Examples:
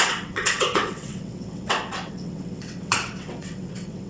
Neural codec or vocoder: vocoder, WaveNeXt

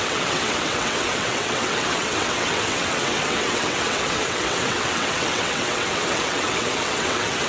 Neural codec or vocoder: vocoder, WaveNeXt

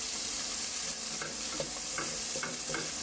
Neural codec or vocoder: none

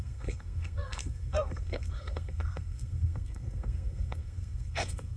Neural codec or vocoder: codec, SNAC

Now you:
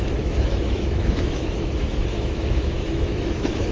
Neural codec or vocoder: autoencoder, DAC-VAE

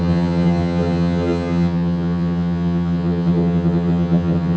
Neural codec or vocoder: vocoder, HiFi-GAN